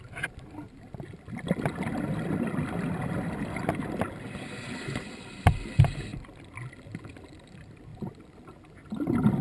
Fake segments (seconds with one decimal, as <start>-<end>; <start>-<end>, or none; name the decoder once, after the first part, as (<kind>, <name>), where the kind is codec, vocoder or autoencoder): 0.0-6.1 (vocoder, BigVGAN v2); 7.1-9.4